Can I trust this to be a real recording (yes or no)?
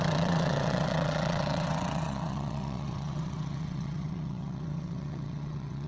no